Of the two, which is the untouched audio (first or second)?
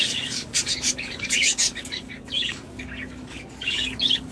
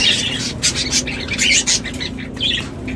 second